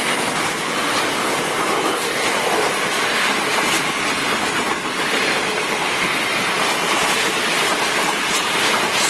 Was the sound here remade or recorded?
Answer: recorded